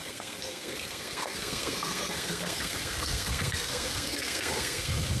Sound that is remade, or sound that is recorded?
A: remade